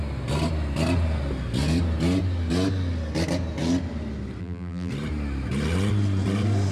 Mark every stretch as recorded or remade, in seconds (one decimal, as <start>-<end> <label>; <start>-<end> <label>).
0.0-4.4 recorded; 4.4-4.9 remade; 4.9-6.7 recorded